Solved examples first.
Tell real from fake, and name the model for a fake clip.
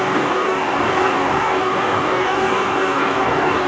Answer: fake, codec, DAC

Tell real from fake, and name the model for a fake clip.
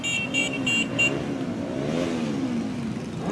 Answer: real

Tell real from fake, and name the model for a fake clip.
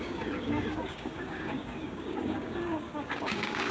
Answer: fake, codec, DAC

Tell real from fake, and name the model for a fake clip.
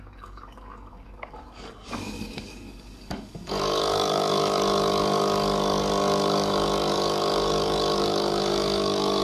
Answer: fake, codec, DAC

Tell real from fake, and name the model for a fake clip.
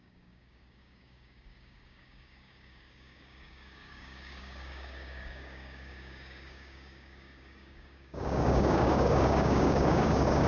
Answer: fake, codec, DAC